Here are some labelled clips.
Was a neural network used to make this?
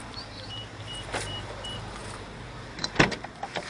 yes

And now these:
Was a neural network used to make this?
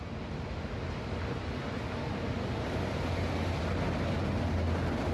no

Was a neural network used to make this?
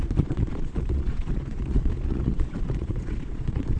yes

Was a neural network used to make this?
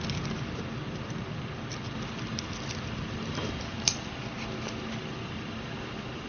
no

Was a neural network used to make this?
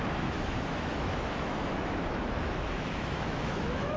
yes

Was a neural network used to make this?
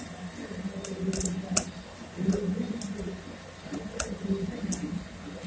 no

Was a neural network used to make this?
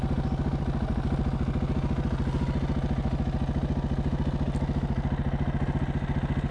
no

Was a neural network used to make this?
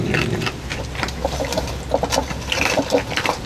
no